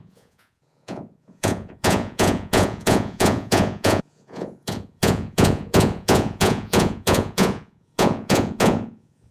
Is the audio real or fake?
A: fake